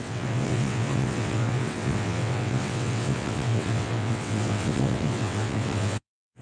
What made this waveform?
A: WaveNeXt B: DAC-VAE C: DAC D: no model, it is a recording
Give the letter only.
A